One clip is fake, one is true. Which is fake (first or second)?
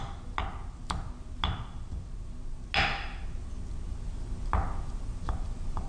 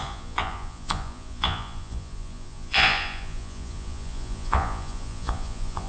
second